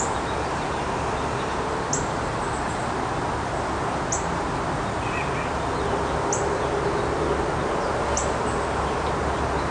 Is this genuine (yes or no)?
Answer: yes